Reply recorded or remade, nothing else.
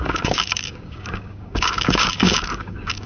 remade